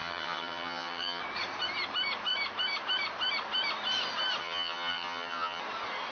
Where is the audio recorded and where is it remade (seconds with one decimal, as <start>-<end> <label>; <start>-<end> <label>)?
0.0-1.2 remade; 1.2-4.4 recorded; 4.4-5.6 remade; 5.6-6.1 recorded